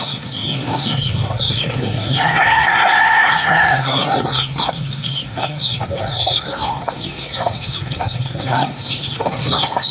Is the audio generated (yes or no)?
yes